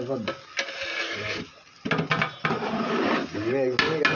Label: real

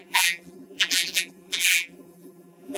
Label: fake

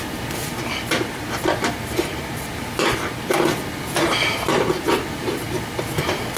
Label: real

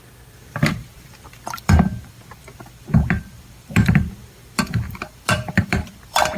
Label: fake